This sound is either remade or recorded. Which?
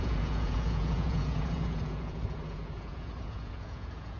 remade